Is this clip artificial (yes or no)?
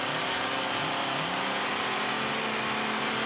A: no